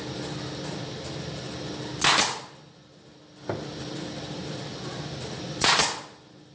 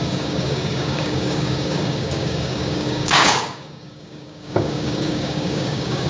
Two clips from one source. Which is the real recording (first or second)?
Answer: first